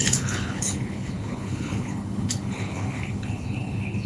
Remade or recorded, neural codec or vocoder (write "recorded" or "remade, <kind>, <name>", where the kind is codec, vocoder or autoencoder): remade, codec, HILCodec